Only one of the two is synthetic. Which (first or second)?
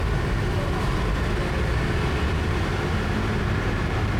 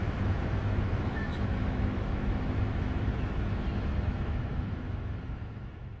second